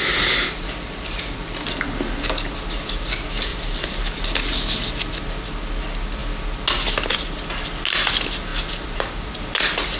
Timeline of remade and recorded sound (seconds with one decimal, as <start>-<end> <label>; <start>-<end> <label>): 0.0-3.5 recorded; 3.5-4.2 remade; 4.2-8.5 recorded; 8.5-9.1 remade; 9.1-10.0 recorded